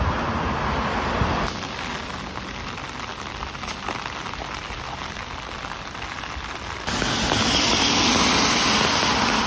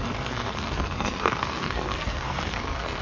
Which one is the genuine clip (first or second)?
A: first